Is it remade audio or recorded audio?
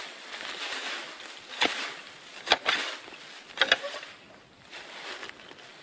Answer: recorded